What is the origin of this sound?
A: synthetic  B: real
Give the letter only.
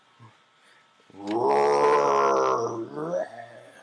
B